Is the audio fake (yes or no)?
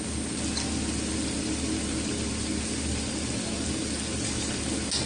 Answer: no